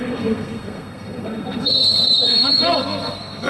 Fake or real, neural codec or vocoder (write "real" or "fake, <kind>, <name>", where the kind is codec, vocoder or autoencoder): fake, codec, SNAC